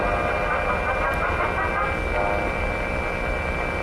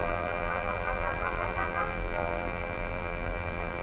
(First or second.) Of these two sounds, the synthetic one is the second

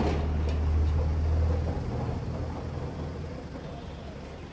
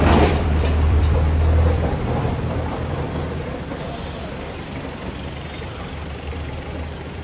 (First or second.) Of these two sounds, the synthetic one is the second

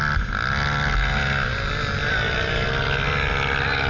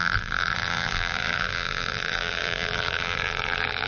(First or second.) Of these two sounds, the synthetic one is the second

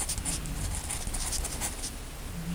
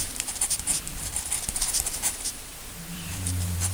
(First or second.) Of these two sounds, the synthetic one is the second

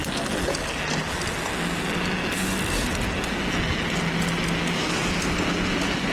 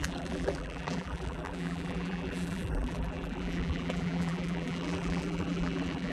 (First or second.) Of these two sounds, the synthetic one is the second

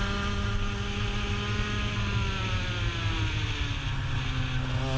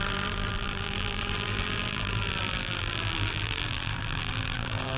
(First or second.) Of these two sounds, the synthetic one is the second